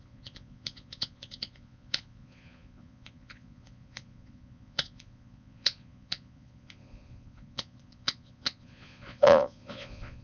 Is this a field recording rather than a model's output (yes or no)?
no